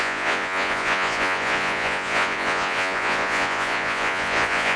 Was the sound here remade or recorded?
remade